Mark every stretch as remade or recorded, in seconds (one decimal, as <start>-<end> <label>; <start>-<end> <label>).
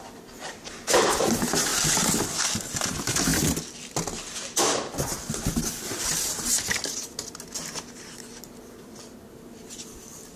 0.0-10.4 recorded